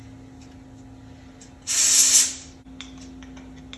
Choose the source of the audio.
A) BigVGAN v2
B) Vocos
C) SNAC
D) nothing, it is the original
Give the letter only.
D